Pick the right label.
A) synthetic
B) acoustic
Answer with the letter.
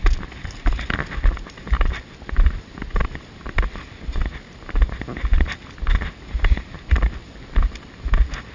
B